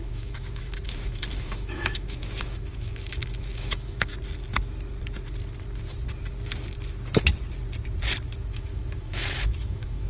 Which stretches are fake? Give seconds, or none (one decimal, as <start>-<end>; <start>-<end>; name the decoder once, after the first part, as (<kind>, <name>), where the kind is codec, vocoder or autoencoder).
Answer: 0.0-4.1 (autoencoder, DAC-VAE); 8.5-10.1